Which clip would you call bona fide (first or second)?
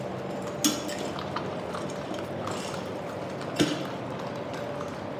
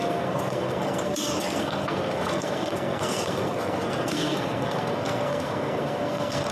first